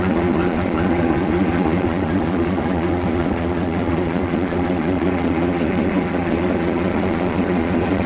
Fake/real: fake